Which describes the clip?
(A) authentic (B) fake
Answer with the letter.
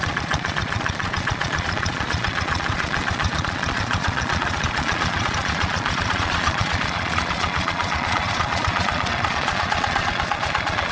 B